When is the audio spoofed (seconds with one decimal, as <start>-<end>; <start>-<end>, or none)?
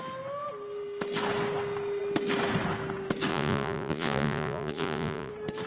3.3-5.3